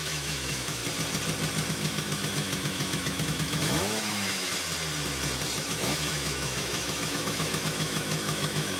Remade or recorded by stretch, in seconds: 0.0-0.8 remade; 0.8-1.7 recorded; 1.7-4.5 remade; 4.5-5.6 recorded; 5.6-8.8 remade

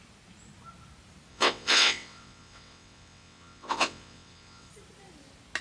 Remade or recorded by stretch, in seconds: 0.0-1.3 recorded; 1.3-4.7 remade; 4.7-5.6 recorded

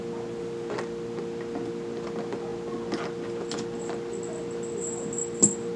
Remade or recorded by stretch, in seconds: 0.0-5.8 recorded

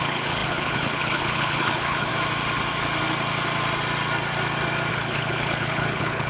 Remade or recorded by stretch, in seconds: 0.0-2.1 remade; 2.1-4.9 recorded; 4.9-6.3 remade

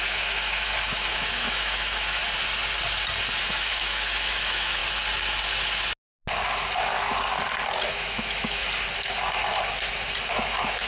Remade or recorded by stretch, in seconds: 0.0-2.2 remade; 2.2-3.4 recorded; 3.4-4.8 remade; 4.8-7.9 recorded; 7.9-8.6 remade; 8.6-10.3 recorded; 10.3-10.9 remade